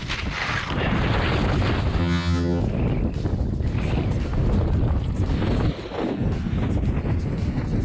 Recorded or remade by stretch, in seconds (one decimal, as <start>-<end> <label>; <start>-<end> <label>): 0.0-2.0 recorded; 2.0-2.6 remade; 2.6-7.8 recorded